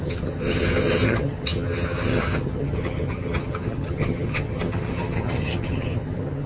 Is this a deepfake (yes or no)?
yes